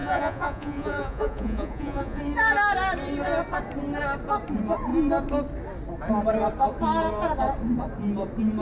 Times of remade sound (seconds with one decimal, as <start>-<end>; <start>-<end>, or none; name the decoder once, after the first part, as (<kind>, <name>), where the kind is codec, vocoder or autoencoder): 0.0-2.2 (vocoder, Vocos)